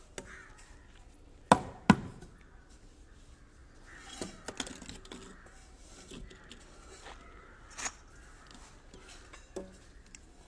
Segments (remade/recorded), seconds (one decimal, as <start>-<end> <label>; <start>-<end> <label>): 0.0-10.5 recorded